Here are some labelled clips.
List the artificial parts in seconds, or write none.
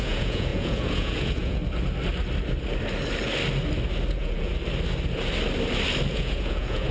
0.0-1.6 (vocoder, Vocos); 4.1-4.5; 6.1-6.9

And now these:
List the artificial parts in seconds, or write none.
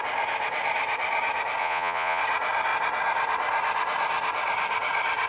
1.6-2.2 (vocoder, Vocos)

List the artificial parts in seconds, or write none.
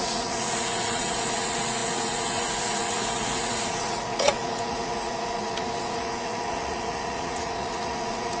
0.0-8.4 (vocoder, Vocos)